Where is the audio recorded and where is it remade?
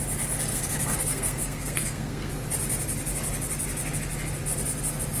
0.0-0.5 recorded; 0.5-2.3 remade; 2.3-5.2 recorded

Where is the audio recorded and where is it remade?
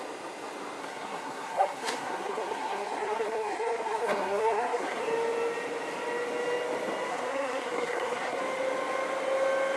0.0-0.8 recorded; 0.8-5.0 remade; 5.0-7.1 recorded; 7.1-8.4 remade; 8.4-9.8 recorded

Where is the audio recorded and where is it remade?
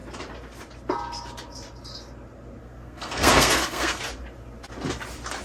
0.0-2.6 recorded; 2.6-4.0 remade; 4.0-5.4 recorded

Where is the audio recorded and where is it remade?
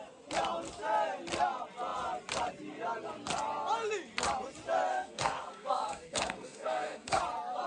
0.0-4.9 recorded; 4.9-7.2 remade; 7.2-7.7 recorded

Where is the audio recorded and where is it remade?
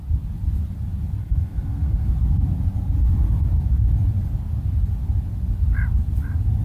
0.0-1.2 recorded; 1.2-2.1 remade; 2.1-6.6 recorded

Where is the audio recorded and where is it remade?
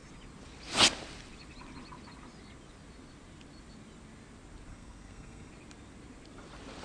0.0-4.7 recorded; 4.7-5.5 remade; 5.5-6.8 recorded